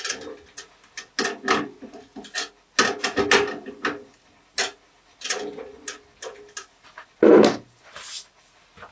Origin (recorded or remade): recorded